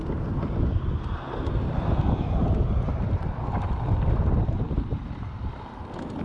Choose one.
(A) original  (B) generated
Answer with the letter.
A